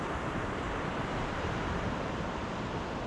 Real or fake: fake